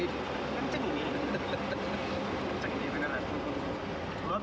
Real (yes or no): yes